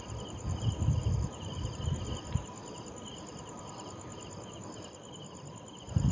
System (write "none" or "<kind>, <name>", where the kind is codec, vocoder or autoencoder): none